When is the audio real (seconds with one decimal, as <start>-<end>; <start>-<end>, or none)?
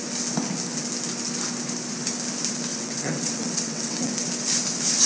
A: 0.0-2.7; 4.1-5.1